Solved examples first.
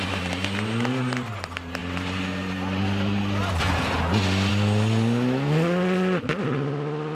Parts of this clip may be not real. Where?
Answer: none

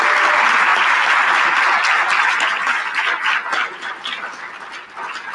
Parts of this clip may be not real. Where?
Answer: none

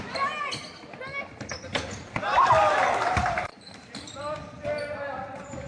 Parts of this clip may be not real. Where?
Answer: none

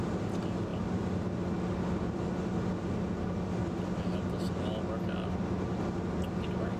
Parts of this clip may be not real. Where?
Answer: none

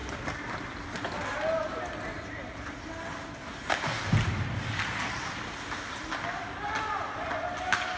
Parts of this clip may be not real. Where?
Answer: none

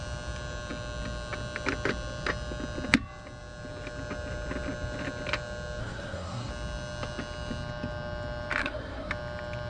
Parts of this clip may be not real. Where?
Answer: 5.8-6.5; 8.6-9.1

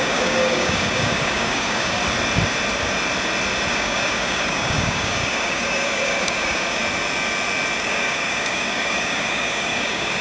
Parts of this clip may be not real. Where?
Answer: 0.0-2.0; 3.7-6.8; 7.8-10.2

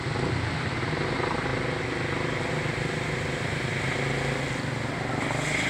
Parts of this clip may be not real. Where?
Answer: none